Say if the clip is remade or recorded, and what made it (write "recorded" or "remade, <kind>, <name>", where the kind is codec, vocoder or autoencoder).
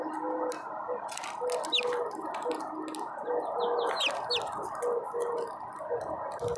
recorded